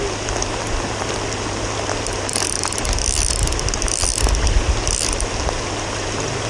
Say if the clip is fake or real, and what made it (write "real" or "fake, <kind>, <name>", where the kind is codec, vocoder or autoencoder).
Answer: real